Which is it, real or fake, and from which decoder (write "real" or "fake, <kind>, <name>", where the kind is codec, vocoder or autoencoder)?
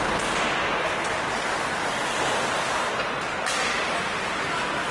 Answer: real